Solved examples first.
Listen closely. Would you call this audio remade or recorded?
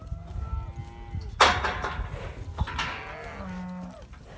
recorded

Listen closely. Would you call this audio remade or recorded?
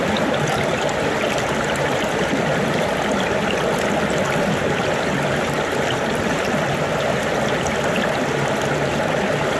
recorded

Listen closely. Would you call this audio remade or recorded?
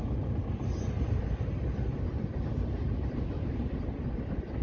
recorded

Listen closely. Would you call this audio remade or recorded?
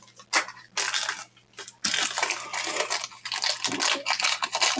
recorded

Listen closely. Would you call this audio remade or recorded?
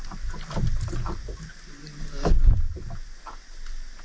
recorded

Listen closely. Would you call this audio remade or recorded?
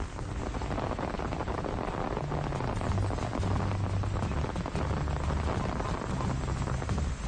recorded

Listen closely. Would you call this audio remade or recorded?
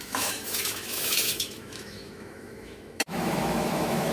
remade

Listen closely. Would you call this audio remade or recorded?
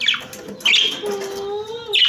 recorded